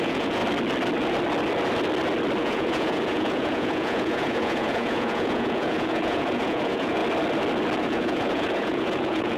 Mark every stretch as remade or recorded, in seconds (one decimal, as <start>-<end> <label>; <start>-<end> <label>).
0.0-0.4 remade; 0.4-2.4 recorded; 2.4-7.0 remade; 7.0-7.8 recorded; 7.8-9.4 remade